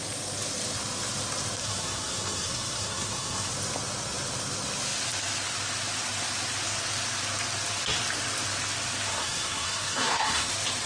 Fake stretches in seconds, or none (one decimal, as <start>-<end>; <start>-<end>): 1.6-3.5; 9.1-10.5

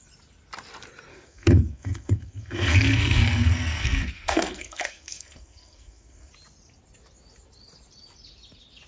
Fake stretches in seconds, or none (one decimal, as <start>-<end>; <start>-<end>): 1.1-6.3

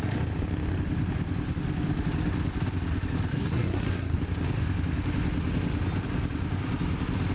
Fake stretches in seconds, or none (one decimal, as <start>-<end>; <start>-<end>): 3.3-4.2